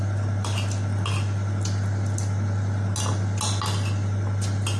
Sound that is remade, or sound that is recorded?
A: recorded